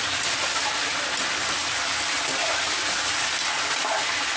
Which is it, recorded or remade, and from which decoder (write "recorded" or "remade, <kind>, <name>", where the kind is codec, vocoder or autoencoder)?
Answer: recorded